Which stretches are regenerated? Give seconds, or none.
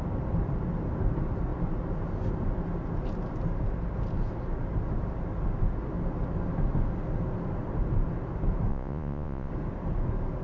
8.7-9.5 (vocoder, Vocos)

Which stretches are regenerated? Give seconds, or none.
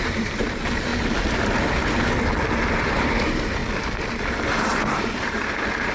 0.0-0.9 (vocoder, BigVGAN v2); 2.7-3.6; 4.4-5.9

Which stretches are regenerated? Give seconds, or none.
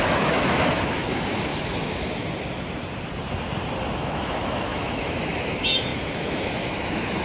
0.0-1.5 (autoencoder, DAC-VAE); 4.0-7.2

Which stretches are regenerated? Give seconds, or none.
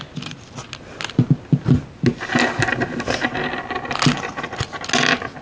none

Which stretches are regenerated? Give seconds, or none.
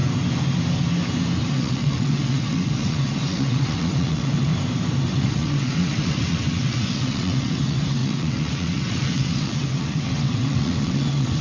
1.5-4.5 (vocoder, WaveNeXt); 5.1-11.4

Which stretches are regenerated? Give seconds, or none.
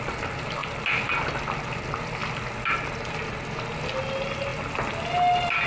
none